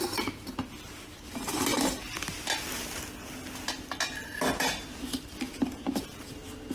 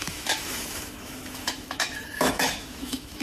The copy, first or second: second